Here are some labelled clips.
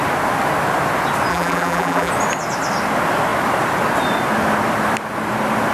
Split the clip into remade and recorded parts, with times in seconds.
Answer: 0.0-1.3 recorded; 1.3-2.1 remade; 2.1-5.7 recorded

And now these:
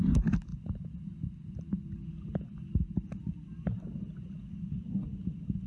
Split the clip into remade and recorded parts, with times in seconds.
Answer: 0.0-5.7 recorded